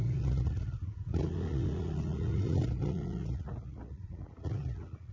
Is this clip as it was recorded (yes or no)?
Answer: no